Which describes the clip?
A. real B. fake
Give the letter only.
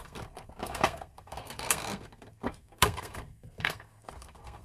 B